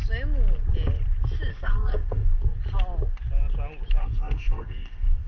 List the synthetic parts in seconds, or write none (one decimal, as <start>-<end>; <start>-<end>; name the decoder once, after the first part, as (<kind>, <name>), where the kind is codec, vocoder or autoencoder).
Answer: 1.5-2.4 (codec, SNAC); 4.0-5.3